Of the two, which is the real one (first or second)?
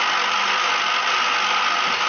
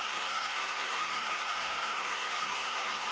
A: first